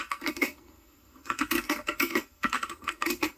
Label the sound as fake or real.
fake